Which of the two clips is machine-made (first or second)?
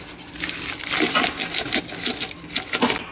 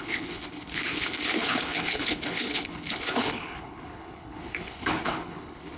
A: second